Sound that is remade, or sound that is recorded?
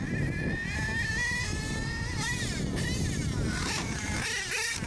recorded